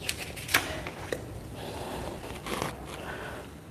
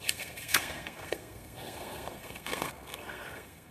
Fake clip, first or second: second